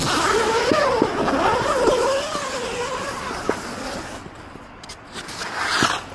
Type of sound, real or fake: real